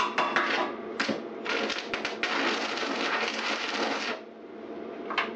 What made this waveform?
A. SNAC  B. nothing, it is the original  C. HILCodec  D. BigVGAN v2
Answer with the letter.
B